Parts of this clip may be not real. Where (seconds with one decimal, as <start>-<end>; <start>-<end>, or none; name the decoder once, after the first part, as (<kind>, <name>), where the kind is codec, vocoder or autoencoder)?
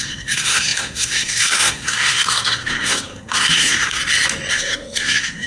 0.0-4.0 (codec, SNAC); 4.5-5.5